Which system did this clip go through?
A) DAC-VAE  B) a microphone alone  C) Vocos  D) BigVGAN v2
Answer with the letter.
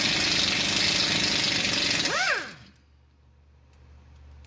B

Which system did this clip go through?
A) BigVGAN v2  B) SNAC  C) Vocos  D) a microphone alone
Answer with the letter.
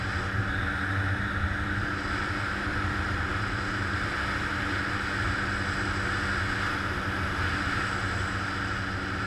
D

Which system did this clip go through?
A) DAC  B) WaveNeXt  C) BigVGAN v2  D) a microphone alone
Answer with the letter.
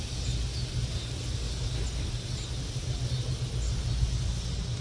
D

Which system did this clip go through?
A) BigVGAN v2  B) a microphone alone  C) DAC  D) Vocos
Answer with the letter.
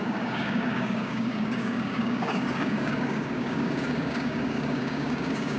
C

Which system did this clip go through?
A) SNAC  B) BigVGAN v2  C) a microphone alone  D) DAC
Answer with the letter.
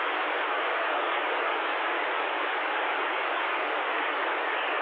D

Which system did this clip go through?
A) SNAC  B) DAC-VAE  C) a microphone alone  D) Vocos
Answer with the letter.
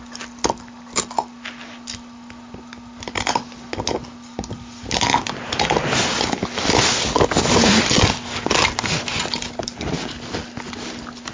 C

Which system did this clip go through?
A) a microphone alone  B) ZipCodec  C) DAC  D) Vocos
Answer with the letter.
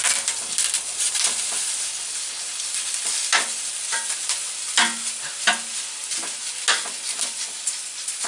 A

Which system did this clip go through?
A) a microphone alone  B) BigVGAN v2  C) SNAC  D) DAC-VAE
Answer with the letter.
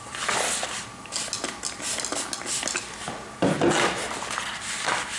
A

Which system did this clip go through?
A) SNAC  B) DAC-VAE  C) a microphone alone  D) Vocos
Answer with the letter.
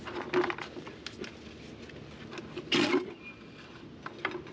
C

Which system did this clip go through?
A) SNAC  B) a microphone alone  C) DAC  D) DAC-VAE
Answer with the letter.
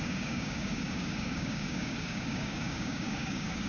C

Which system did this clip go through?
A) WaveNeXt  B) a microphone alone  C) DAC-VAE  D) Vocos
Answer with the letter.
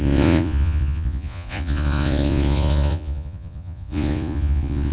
D